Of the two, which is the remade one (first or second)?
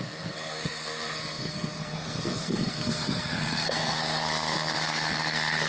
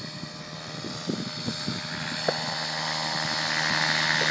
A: first